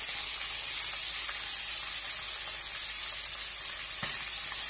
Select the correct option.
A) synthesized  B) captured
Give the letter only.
B